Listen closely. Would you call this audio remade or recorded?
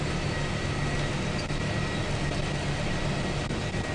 recorded